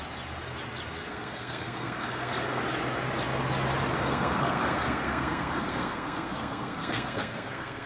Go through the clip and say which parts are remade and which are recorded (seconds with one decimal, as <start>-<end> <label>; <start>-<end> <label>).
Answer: 0.0-1.1 recorded; 1.1-2.6 remade; 2.6-3.9 recorded; 3.9-7.9 remade